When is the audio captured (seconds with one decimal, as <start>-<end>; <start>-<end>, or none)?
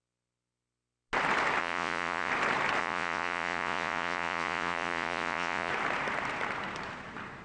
0.0-1.6; 2.3-2.8; 5.7-7.4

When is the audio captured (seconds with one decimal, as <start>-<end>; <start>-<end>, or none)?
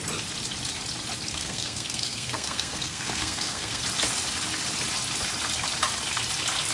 0.0-1.3; 3.8-6.7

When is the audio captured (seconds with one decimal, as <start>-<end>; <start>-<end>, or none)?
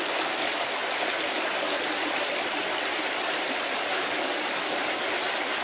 0.0-5.6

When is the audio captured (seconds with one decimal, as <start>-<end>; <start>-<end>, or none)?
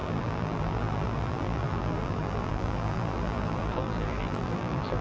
none